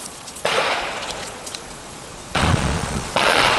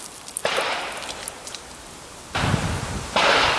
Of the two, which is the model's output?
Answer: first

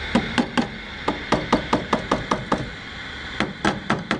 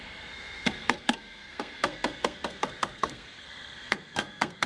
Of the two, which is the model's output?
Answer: second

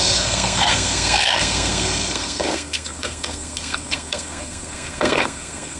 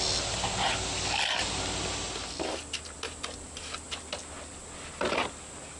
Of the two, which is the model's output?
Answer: first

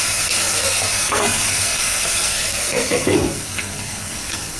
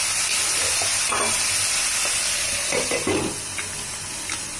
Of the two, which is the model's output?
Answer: first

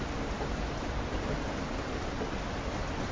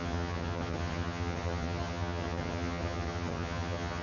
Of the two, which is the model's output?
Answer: second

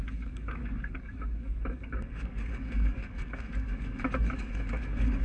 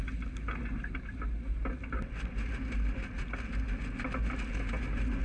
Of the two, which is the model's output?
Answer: first